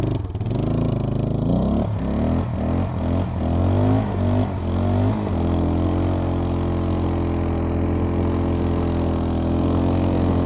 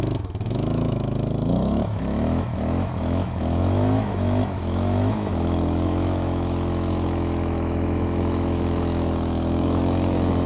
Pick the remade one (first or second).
second